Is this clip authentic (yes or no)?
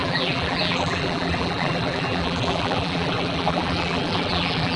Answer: no